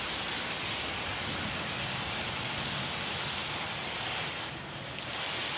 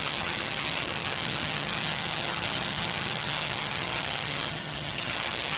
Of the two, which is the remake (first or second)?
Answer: second